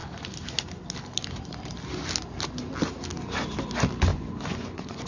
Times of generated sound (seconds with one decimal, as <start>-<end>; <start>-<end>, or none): 4.1-5.1